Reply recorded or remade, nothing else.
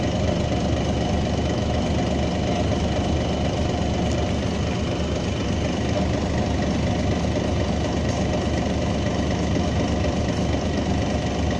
recorded